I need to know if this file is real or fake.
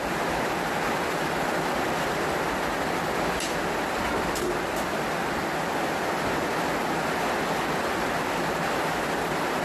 real